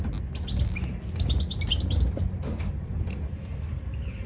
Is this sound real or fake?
real